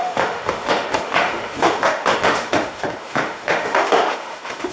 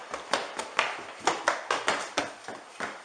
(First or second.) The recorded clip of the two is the second